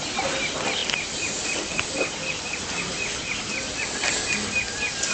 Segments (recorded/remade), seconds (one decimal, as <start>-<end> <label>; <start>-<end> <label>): 0.0-5.1 recorded